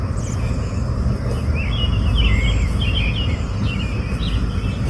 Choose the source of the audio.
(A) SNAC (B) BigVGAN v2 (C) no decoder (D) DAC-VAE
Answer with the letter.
C